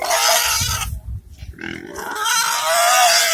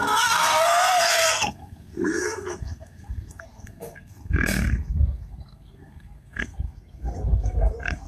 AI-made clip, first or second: second